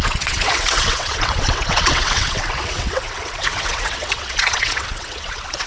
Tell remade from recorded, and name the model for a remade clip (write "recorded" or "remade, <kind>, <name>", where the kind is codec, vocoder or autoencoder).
remade, vocoder, WaveNeXt